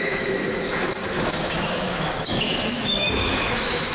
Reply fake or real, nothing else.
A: fake